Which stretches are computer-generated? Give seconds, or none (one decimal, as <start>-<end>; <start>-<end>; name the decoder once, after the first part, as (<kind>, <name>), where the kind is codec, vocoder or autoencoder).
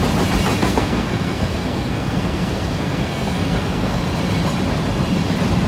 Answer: 0.6-4.0 (codec, SNAC)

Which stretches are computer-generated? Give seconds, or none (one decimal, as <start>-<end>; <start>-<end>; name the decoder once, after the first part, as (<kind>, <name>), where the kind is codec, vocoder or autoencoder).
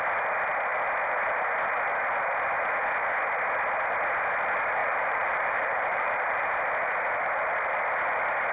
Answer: 4.8-6.5 (vocoder, BigVGAN v2)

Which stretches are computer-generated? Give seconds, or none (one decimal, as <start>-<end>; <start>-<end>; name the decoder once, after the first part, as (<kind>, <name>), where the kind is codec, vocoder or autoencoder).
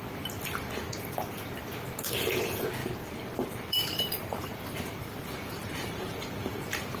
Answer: 2.8-6.3 (vocoder, BigVGAN v2)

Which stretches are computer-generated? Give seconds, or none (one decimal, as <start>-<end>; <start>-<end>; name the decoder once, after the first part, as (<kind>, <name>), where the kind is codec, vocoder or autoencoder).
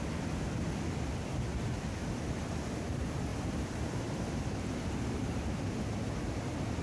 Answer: 0.0-1.1 (vocoder, BigVGAN v2); 1.5-2.4; 3.3-5.6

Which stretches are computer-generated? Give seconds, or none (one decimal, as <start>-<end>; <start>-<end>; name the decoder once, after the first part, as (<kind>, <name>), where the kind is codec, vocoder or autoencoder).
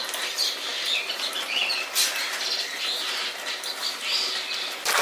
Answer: none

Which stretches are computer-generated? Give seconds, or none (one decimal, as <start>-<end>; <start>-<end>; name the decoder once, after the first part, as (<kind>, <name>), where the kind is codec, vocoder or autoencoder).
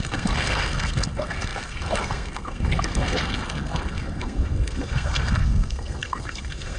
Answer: 0.0-6.8 (codec, SNAC)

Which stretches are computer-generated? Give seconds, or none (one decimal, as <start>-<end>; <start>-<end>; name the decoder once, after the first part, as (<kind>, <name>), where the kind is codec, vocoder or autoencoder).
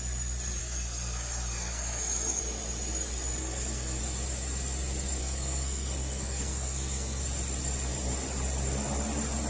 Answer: 0.6-2.4 (codec, SNAC); 3.4-4.0; 5.2-7.2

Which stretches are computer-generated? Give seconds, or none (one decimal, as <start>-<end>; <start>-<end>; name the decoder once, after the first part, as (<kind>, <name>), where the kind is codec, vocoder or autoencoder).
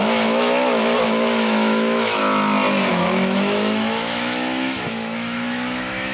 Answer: 0.0-2.2 (autoencoder, DAC-VAE); 2.9-6.1